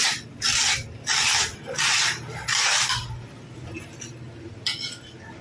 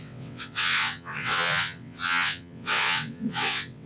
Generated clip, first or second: second